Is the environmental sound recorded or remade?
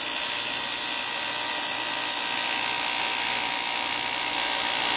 recorded